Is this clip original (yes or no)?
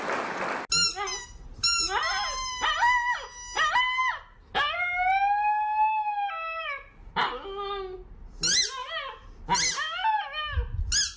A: yes